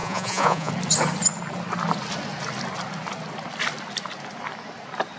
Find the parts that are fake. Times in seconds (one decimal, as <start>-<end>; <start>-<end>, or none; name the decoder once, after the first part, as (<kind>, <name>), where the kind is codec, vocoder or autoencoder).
0.0-0.7 (vocoder, Vocos)